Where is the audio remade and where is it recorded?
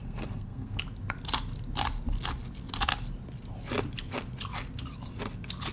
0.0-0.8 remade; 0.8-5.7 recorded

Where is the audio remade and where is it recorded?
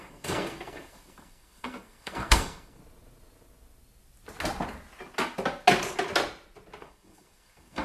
0.0-2.8 remade; 2.8-6.8 recorded; 6.8-7.8 remade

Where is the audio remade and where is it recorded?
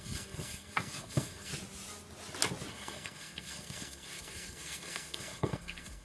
0.0-1.5 remade; 1.5-2.7 recorded; 2.7-6.0 remade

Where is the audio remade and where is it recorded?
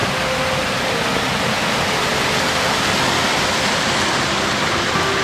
0.0-5.2 recorded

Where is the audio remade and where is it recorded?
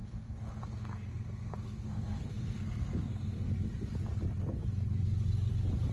0.0-3.5 remade; 3.5-5.9 recorded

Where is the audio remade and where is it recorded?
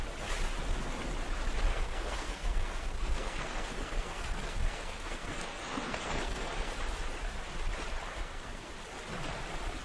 0.0-1.7 recorded; 1.7-6.8 remade; 6.8-8.1 recorded; 8.1-8.7 remade; 8.7-9.8 recorded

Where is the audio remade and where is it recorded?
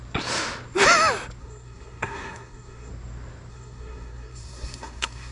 0.0-1.4 recorded; 1.4-2.9 remade; 2.9-3.5 recorded; 3.5-5.3 remade